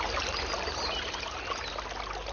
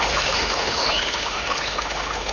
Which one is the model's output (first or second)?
second